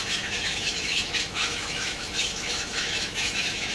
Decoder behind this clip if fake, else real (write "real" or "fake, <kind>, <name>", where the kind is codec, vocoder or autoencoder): fake, autoencoder, DAC-VAE